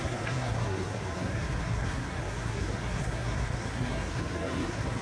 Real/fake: fake